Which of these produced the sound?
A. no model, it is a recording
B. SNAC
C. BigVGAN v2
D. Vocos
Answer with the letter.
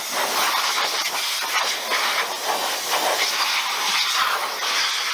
A